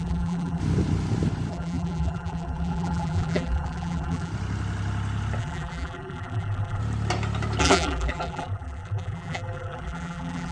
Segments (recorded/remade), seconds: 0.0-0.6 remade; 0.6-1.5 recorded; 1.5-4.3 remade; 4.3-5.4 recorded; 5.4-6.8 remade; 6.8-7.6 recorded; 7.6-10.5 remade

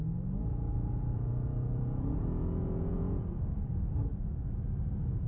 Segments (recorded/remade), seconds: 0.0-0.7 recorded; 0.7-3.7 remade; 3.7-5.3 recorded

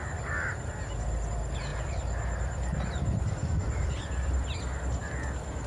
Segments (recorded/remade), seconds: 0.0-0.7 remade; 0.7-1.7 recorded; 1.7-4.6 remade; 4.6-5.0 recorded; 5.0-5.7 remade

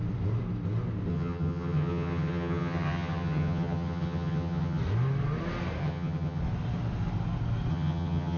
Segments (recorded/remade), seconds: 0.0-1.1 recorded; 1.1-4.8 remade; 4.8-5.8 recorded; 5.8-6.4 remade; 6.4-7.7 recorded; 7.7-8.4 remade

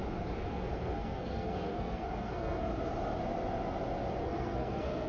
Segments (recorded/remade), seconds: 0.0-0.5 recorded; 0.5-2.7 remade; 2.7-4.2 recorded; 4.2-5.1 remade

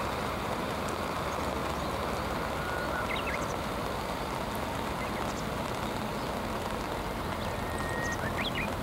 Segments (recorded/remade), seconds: 0.0-8.8 recorded

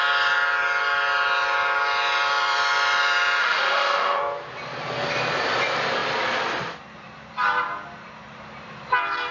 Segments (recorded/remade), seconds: 0.0-3.4 recorded; 3.4-4.2 remade; 4.2-9.3 recorded

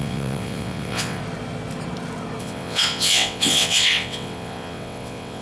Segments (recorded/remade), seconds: 0.0-1.2 remade; 1.2-2.4 recorded; 2.4-5.4 remade